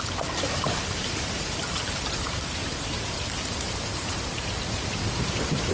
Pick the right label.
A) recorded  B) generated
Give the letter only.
B